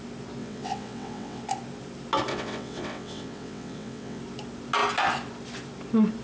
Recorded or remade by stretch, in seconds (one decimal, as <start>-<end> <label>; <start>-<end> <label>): 0.0-0.4 recorded; 0.4-1.4 remade; 1.4-2.3 recorded; 2.3-4.2 remade; 4.2-6.2 recorded